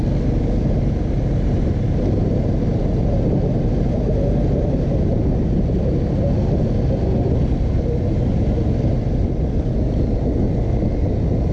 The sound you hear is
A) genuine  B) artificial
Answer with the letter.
A